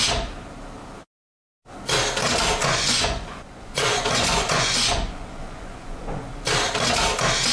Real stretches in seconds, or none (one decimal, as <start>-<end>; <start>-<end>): 0.0-2.6; 6.3-7.5